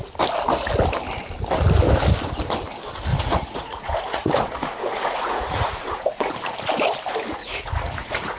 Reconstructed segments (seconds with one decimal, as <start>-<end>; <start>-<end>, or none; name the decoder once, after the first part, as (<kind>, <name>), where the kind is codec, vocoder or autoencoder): 3.1-6.3 (vocoder, Vocos); 7.4-8.4

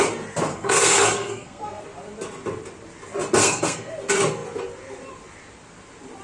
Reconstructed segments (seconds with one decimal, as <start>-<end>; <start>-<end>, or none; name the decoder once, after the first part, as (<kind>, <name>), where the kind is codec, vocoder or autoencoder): 0.5-1.8 (codec, SNAC); 3.4-3.9

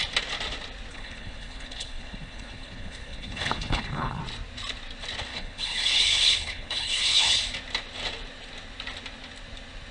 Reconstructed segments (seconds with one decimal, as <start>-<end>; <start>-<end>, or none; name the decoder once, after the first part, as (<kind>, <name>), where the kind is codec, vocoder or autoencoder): 0.9-4.2 (codec, HILCodec); 5.3-7.4

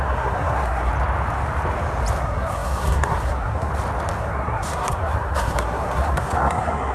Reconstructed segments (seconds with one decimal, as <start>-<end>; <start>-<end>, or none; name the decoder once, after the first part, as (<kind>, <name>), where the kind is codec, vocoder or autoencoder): 0.0-0.9 (codec, SNAC); 2.2-3.7; 4.2-6.9

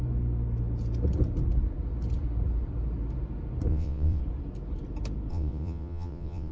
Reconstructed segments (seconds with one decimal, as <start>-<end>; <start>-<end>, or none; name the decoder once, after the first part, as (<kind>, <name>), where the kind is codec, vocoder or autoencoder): 3.7-4.2 (vocoder, WaveNeXt); 5.3-6.5

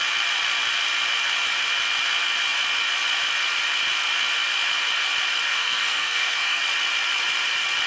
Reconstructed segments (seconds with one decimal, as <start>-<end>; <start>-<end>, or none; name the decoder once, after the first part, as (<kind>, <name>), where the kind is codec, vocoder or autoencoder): 5.5-6.6 (codec, SNAC)

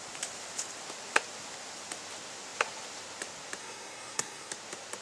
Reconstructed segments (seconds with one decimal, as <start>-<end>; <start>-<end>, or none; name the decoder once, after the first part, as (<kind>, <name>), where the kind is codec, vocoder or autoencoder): 3.6-4.5 (codec, SNAC)